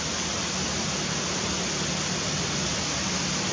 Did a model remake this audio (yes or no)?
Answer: no